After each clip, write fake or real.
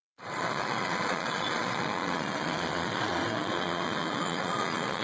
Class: fake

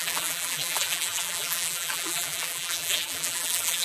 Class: fake